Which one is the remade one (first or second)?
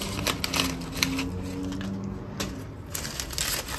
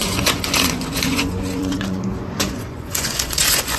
second